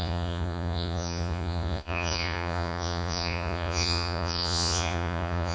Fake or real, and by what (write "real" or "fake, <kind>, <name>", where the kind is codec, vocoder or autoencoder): fake, vocoder, Vocos